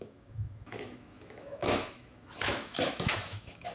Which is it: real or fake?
fake